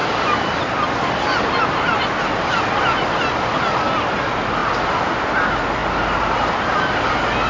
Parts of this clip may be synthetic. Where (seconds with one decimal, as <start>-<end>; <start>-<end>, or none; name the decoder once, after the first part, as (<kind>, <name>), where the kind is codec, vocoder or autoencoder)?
4.6-5.3 (vocoder, BigVGAN v2); 5.8-7.1